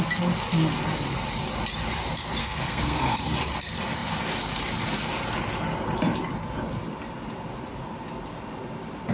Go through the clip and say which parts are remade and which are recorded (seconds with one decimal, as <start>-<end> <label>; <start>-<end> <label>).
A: 0.0-2.4 recorded; 2.4-3.1 remade; 3.1-9.1 recorded